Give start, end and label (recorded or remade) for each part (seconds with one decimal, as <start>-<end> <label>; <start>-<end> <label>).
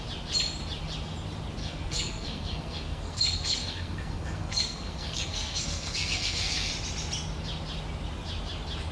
0.0-1.6 recorded; 1.6-6.7 remade; 6.7-8.9 recorded